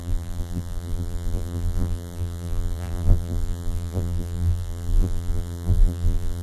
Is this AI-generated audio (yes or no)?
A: yes